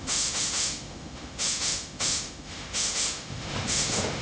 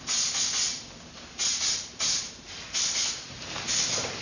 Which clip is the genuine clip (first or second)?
second